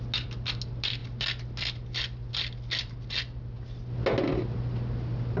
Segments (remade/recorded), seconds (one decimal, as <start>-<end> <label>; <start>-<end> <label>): 0.0-5.4 recorded